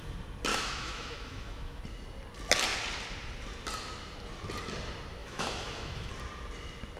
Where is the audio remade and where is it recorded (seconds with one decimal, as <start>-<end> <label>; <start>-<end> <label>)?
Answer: 0.0-0.5 recorded; 0.5-1.8 remade; 1.8-5.2 recorded; 5.2-6.1 remade; 6.1-7.0 recorded